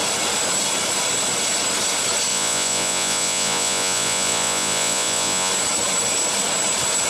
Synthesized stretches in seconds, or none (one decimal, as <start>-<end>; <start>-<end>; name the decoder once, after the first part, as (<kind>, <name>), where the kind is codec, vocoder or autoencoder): 2.3-5.5 (vocoder, Vocos)